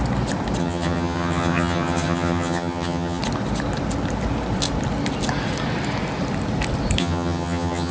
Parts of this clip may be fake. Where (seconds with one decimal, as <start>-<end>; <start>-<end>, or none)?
0.6-3.2; 7.0-7.9